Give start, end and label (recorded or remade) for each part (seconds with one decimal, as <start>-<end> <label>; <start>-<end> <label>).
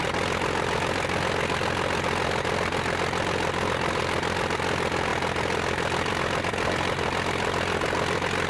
0.0-8.5 recorded